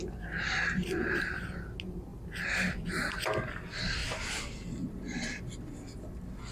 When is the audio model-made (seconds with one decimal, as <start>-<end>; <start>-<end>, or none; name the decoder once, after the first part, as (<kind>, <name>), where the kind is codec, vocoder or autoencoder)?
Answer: 2.1-3.2 (vocoder, BigVGAN v2); 4.0-5.4